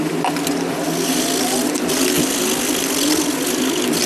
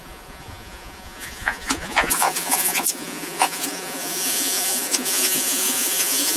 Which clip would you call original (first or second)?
first